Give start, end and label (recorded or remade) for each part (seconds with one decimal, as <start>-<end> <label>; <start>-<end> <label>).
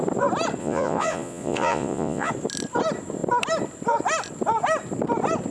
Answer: 0.0-0.6 recorded; 0.6-2.3 remade; 2.3-5.5 recorded